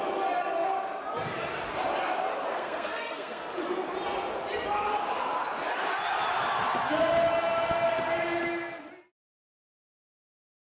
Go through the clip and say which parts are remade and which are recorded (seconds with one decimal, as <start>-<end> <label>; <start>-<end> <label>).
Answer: 0.0-2.5 recorded; 2.5-3.4 remade; 3.4-10.7 recorded